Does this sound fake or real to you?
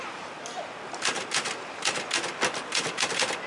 real